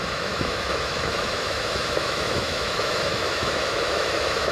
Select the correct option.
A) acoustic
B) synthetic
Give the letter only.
B